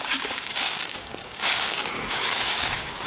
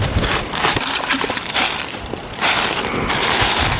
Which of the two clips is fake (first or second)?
first